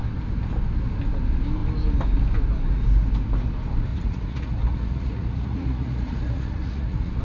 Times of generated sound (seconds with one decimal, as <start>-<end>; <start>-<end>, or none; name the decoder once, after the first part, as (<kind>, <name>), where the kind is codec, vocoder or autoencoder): 3.9-7.2 (vocoder, Vocos)